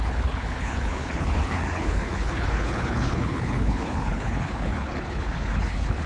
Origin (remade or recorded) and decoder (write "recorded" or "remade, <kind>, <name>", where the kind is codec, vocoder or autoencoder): remade, codec, HILCodec